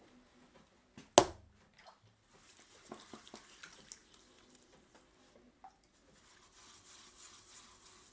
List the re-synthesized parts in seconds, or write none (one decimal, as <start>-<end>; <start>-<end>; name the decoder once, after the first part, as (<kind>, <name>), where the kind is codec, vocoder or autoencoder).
none